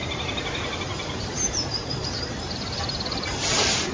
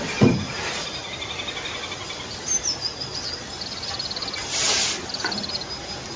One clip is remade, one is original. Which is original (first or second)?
second